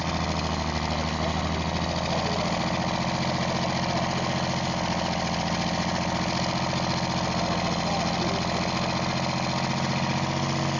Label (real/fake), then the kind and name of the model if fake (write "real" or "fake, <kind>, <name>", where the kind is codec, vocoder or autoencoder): real